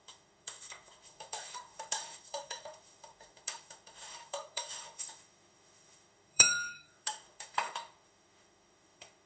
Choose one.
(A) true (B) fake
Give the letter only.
B